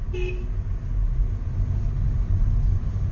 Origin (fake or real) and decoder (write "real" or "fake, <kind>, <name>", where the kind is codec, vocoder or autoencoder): real